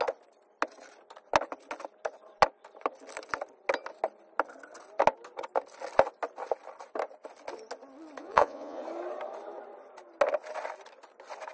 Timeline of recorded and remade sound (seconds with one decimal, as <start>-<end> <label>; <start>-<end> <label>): 0.0-8.2 recorded; 8.2-8.8 remade; 8.8-11.5 recorded